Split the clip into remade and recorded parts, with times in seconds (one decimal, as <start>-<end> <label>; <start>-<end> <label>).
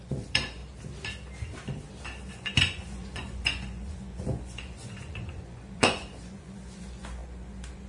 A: 0.0-0.6 remade; 0.6-2.3 recorded; 2.3-7.9 remade